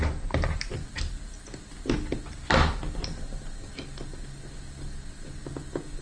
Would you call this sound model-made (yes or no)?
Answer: no